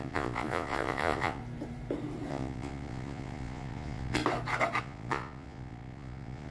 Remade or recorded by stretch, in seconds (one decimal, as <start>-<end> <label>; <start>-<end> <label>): 0.0-1.4 remade; 1.4-2.3 recorded; 2.3-4.2 remade; 4.2-4.8 recorded; 4.8-6.5 remade